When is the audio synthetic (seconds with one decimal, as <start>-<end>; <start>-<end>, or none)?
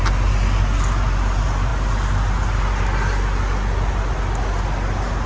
none